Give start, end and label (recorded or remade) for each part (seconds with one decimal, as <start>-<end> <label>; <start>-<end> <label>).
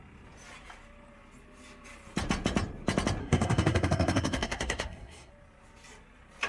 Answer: 0.0-3.2 recorded; 3.2-5.3 remade; 5.3-6.5 recorded